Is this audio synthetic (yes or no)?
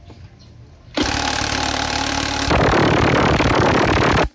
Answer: no